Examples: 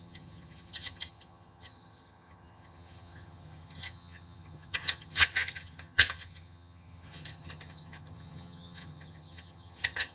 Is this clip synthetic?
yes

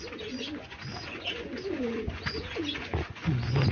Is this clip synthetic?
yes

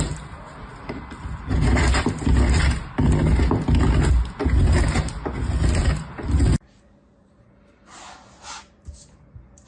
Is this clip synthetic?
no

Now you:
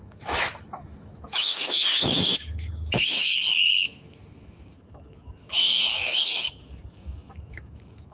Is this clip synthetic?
yes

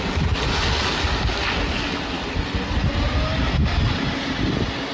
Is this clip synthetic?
no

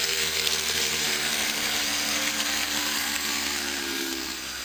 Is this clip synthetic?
yes